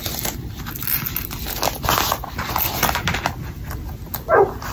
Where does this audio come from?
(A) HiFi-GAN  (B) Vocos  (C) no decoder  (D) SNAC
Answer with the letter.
C